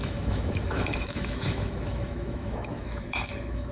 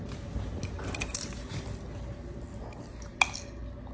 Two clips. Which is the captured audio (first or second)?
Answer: second